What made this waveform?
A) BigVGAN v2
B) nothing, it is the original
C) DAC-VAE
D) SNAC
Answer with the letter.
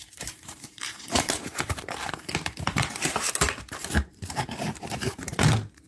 A